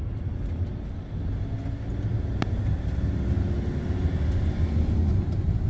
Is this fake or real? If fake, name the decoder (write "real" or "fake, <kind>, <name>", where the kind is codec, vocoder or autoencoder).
real